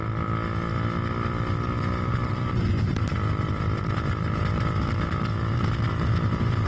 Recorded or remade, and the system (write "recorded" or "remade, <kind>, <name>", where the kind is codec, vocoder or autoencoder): recorded